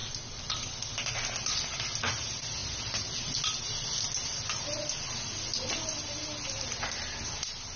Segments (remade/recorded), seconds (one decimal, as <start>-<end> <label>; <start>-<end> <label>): 0.0-7.8 recorded